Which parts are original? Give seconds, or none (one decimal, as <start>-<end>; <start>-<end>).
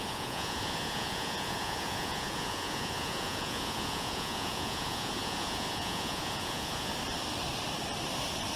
6.9-8.6